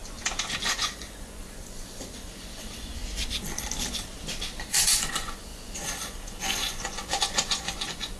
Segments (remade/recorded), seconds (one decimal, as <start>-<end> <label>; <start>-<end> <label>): 0.0-0.6 recorded; 0.6-3.0 remade; 3.0-4.6 recorded; 4.6-8.2 remade